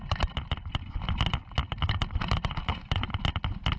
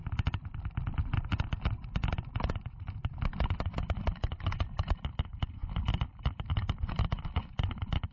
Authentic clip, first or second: first